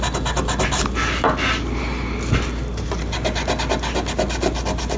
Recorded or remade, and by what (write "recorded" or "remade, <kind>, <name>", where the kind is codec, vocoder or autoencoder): recorded